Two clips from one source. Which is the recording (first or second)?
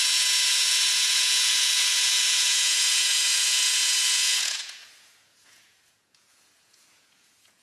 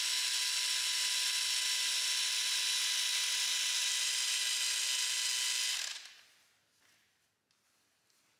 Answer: second